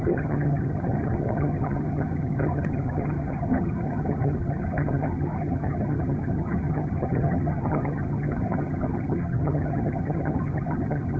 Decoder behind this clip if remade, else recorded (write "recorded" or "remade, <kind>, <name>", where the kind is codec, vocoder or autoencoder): remade, vocoder, HiFi-GAN